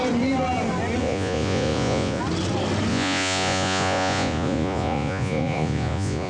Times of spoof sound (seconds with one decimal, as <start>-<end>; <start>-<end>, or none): 1.0-2.2; 2.9-6.3